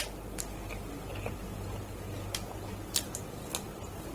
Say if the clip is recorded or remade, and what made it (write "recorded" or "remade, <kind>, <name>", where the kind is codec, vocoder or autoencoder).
recorded